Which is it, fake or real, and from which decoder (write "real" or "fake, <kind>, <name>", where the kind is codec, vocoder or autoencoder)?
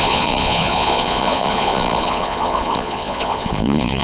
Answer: fake, vocoder, Vocos